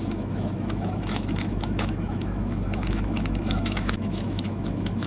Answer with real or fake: fake